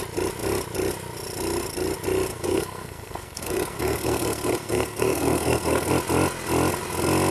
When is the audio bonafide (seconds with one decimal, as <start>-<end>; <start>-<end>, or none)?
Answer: 0.0-2.3; 5.9-7.3